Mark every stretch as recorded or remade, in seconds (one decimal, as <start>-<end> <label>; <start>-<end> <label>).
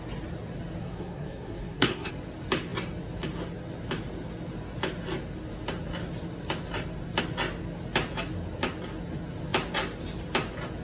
0.0-0.8 recorded; 0.8-2.1 remade; 2.1-10.8 recorded